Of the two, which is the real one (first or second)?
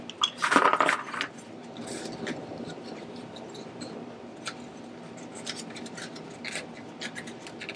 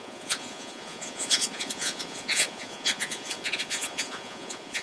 first